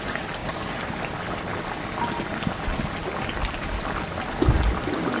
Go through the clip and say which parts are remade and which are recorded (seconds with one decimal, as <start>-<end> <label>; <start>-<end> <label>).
0.0-5.2 recorded